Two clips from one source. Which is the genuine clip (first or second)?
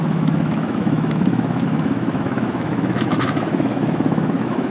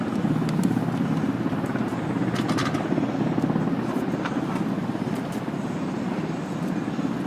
second